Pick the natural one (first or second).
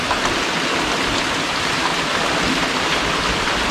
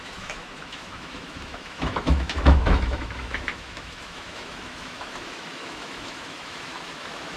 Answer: first